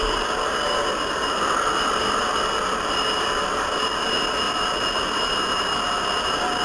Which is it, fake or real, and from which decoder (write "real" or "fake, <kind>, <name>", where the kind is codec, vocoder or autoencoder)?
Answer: real